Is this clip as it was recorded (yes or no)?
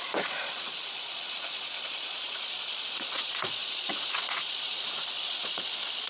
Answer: no